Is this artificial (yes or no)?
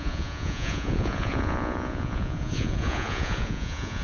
yes